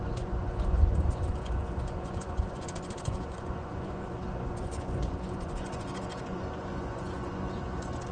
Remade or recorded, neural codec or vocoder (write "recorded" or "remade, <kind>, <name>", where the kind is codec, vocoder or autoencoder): remade, vocoder, Vocos